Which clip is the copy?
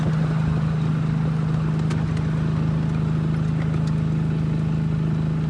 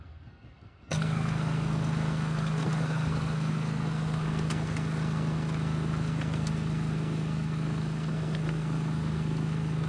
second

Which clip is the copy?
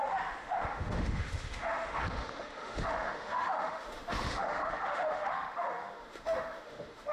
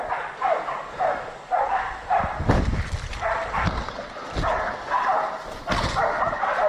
first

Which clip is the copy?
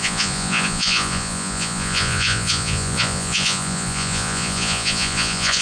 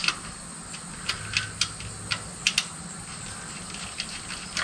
first